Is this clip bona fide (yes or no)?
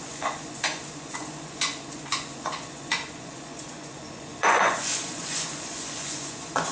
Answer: no